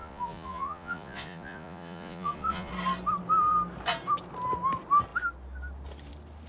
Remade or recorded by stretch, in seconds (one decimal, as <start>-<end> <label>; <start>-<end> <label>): 0.0-2.7 remade; 2.7-6.5 recorded